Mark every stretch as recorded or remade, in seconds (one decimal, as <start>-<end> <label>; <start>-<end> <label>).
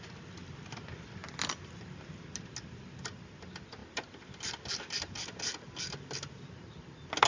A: 0.0-7.3 recorded